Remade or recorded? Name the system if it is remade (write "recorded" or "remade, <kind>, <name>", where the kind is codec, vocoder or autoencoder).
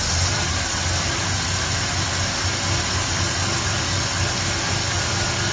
recorded